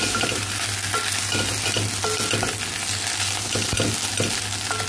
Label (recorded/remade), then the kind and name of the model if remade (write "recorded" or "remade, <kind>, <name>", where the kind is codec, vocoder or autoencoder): recorded